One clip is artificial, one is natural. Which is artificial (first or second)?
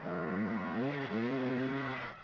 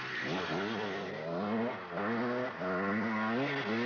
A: first